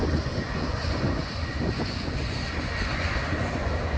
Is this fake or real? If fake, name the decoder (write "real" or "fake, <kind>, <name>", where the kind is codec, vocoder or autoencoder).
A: fake, vocoder, Vocos